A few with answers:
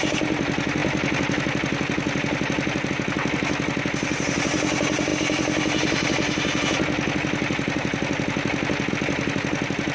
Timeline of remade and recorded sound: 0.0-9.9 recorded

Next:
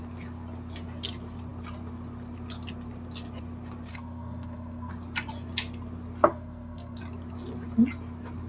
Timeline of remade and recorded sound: 0.0-3.9 recorded; 3.9-4.9 remade; 4.9-6.3 recorded; 6.3-7.0 remade; 7.0-8.5 recorded

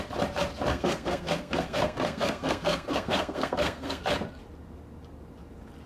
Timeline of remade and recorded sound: 0.0-0.7 recorded; 0.7-4.0 remade; 4.0-5.9 recorded